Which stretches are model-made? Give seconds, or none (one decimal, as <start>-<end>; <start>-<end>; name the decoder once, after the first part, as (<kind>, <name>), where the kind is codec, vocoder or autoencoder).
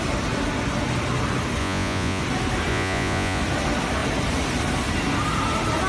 1.6-2.2 (vocoder, Vocos); 2.7-3.4